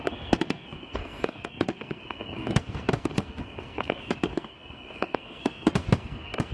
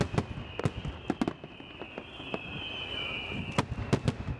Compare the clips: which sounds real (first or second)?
second